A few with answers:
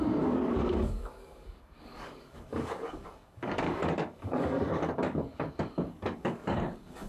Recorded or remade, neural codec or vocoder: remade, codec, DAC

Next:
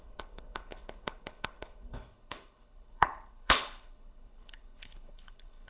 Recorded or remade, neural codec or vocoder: remade, codec, HILCodec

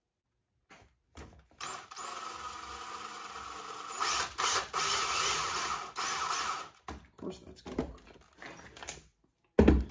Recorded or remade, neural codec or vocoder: recorded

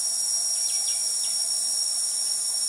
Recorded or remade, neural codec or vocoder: recorded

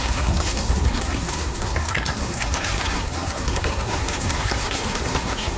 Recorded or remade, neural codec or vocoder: remade, codec, SNAC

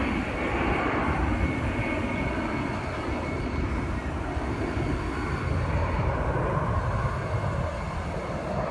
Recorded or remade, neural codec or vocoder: recorded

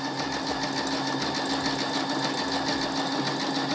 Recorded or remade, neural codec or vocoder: recorded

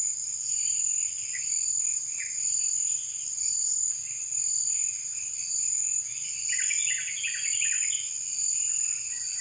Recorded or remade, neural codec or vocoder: recorded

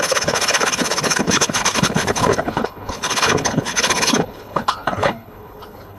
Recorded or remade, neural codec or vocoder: remade, codec, HILCodec